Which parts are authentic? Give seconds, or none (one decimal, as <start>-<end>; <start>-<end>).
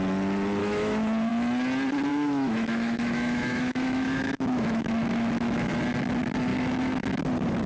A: 0.0-0.6; 1.3-2.1; 5.7-6.5; 7.2-7.7